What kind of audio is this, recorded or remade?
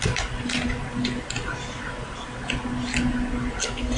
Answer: recorded